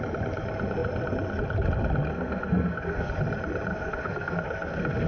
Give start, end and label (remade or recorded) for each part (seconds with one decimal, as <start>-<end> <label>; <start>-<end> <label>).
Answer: 0.0-2.1 recorded; 2.1-3.1 remade; 3.1-3.7 recorded; 3.7-5.1 remade